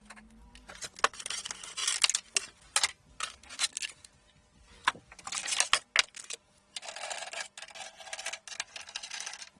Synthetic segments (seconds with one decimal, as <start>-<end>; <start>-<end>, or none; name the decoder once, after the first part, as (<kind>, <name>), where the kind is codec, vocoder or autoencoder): none